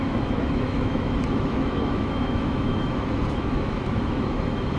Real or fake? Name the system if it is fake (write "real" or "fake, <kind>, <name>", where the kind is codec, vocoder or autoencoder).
fake, autoencoder, DAC-VAE